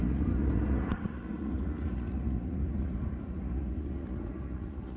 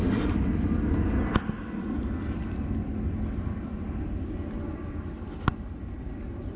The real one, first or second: second